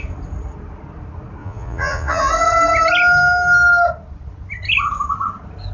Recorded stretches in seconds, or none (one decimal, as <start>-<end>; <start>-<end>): 0.0-1.4; 2.3-5.7